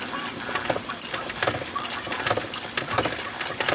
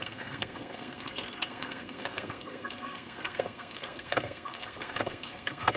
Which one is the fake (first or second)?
second